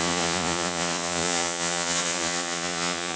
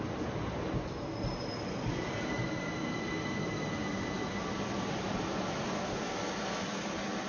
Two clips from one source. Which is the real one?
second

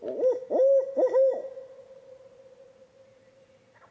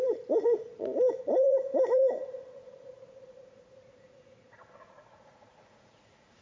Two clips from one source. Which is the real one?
first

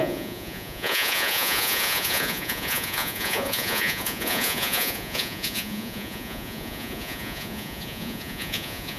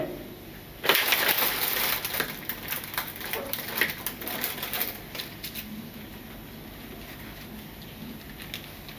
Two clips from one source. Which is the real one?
second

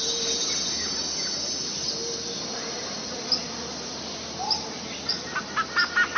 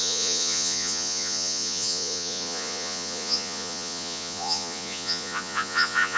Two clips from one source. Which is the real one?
first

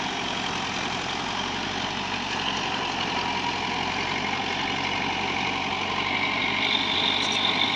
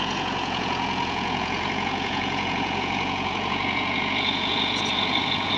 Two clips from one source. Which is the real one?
first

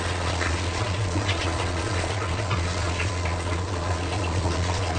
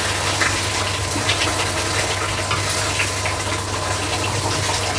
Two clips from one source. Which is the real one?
second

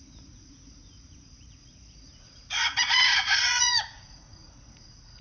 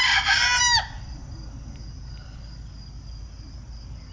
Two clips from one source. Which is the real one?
second